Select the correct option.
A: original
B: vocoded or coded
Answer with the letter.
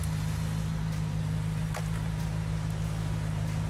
A